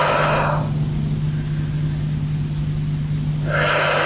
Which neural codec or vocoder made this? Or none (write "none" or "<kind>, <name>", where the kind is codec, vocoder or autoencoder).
none